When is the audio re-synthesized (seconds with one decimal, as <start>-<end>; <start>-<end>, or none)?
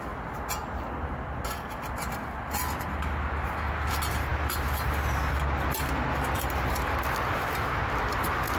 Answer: none